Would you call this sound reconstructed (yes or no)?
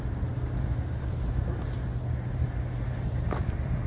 no